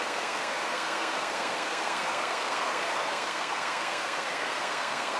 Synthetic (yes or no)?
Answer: yes